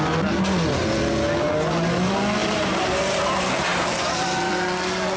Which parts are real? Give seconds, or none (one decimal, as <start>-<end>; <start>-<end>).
0.0-2.4; 3.2-3.7; 4.5-5.2